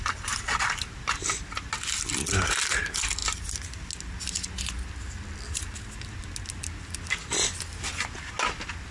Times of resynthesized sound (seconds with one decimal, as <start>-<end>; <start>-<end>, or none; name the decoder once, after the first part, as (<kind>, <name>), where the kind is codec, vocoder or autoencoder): none